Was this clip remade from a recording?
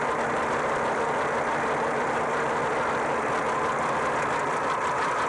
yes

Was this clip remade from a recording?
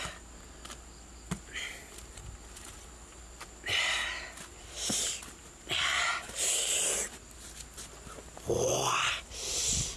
no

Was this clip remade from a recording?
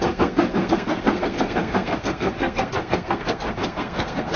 yes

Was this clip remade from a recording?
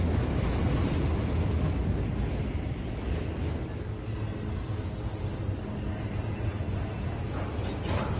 no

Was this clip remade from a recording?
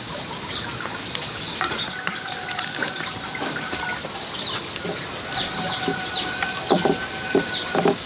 yes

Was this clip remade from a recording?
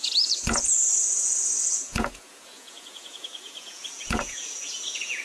yes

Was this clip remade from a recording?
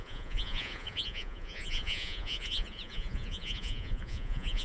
yes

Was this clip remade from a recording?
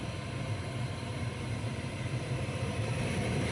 yes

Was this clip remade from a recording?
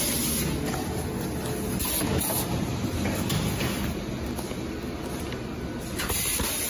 no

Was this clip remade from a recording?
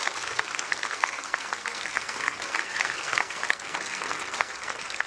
yes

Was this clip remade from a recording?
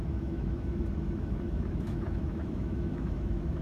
yes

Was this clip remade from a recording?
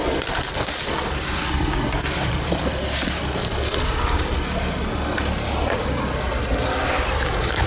no